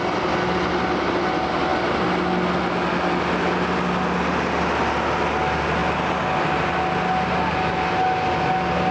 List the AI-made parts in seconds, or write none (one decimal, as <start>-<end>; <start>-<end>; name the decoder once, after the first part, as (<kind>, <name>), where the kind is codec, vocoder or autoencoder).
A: none